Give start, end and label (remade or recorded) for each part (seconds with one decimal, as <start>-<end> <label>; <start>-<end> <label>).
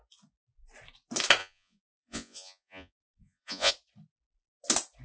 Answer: 0.0-1.4 recorded; 1.4-3.7 remade; 3.7-5.0 recorded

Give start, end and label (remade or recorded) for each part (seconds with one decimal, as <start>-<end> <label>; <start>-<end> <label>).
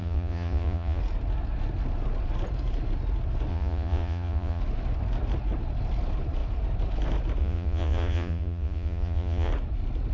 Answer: 0.0-1.0 remade; 1.0-3.5 recorded; 3.5-4.6 remade; 4.6-7.4 recorded; 7.4-9.5 remade; 9.5-10.1 recorded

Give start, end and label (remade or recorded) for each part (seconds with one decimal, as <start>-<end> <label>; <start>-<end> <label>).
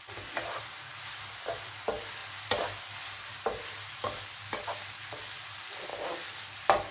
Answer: 0.0-6.9 recorded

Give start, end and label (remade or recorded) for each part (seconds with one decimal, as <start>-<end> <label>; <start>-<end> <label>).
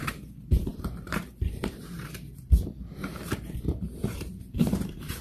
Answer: 0.0-5.2 remade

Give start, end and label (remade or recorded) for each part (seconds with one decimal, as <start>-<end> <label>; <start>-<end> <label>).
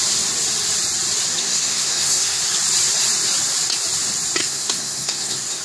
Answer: 0.0-1.4 recorded; 1.4-2.4 remade; 2.4-4.4 recorded; 4.4-5.6 remade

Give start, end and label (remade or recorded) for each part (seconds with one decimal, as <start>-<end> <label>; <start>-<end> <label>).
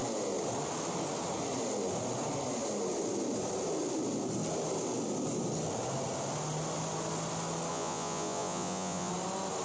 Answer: 0.0-7.7 recorded; 7.7-9.1 remade; 9.1-9.6 recorded